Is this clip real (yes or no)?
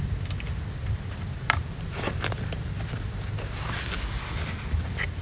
yes